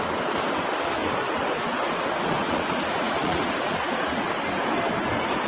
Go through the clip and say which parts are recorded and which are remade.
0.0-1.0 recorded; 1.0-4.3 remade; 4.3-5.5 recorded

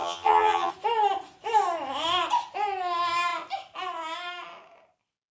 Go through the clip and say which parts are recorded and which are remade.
0.0-0.7 remade; 0.7-5.3 recorded

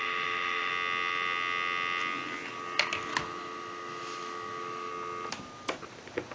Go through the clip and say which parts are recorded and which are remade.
0.0-0.7 remade; 0.7-3.1 recorded; 3.1-4.9 remade; 4.9-6.3 recorded

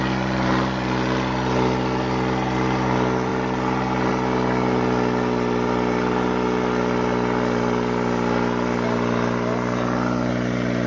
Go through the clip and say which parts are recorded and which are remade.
0.0-10.9 recorded